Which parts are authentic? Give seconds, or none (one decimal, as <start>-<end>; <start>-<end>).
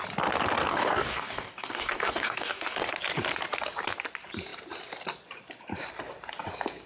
0.0-0.7; 2.9-6.9